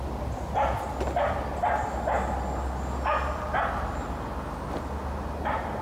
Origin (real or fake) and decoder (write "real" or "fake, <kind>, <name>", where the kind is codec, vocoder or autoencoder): real